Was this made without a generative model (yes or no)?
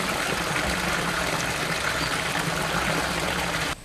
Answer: yes